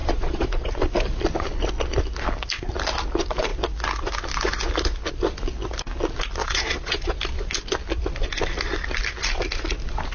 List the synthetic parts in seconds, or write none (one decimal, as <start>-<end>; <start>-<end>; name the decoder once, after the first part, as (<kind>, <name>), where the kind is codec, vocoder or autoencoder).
0.0-0.7 (vocoder, Vocos); 6.4-7.2